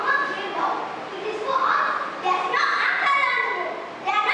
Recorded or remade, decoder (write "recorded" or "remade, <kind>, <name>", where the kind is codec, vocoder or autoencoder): recorded